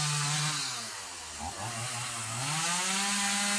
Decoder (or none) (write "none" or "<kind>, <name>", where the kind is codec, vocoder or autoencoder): none